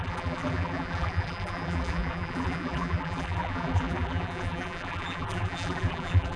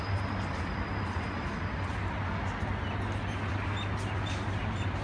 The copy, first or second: first